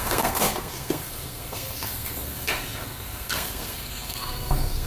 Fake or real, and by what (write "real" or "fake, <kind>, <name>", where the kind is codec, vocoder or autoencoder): fake, codec, SNAC